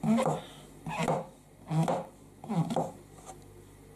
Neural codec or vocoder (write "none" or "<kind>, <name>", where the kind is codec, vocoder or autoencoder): none